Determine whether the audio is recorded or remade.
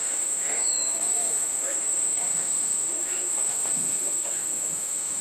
remade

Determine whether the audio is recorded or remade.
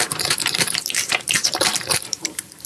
remade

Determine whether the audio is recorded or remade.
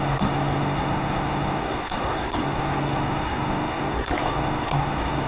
remade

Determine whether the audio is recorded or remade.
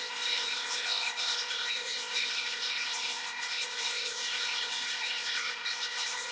remade